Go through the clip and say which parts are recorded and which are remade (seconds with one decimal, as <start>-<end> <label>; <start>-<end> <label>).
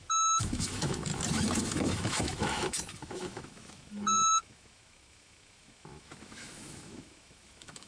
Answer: 0.0-1.1 remade; 1.1-1.7 recorded; 1.7-7.9 remade